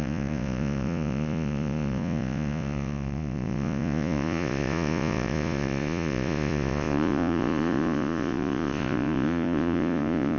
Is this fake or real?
fake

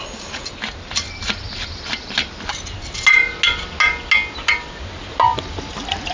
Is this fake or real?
real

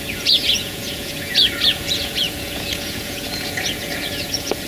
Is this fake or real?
fake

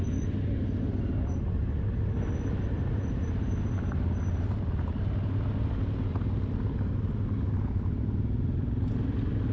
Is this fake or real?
real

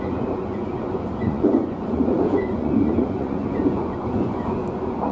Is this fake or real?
fake